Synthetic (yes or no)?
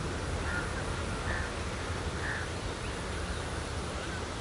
no